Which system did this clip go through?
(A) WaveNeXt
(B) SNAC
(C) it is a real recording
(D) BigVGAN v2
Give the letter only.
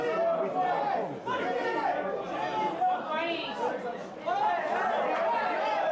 C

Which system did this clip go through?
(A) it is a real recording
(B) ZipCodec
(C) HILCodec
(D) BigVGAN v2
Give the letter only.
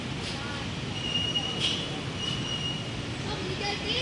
A